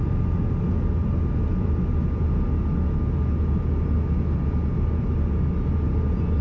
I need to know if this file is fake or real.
real